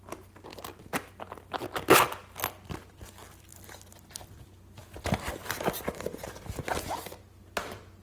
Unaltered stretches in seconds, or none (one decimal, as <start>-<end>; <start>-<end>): 0.0-8.0